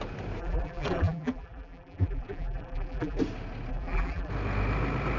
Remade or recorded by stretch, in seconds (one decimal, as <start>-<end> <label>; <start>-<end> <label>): 0.0-0.4 recorded; 0.4-3.2 remade; 3.2-3.7 recorded; 3.7-4.3 remade; 4.3-5.2 recorded